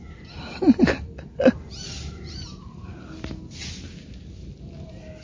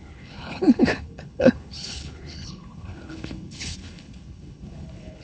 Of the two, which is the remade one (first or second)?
second